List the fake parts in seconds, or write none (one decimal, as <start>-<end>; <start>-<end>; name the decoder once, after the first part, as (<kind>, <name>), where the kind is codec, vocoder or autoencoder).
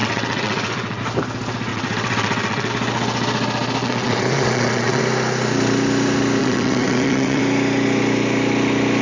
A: 0.0-1.0 (vocoder, WaveNeXt); 1.7-2.7; 3.8-5.0; 6.4-7.4